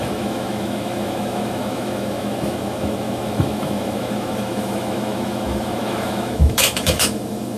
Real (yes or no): no